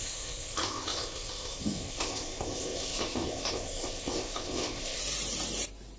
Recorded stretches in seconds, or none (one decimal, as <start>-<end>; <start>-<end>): 5.0-6.0